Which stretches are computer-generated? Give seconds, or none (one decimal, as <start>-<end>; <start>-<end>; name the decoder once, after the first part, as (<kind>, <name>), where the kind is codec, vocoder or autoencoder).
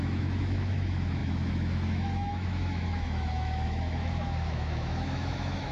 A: 0.0-5.7 (autoencoder, DAC-VAE)